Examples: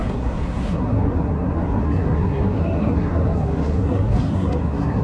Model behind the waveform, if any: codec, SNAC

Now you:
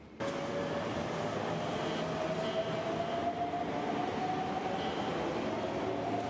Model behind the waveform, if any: none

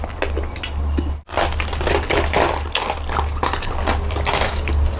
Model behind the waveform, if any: none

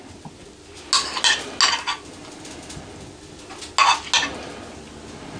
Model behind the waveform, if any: none